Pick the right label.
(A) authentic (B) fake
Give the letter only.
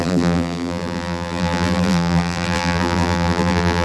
B